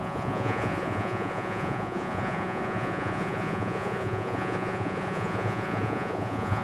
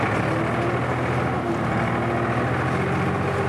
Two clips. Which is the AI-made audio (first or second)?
first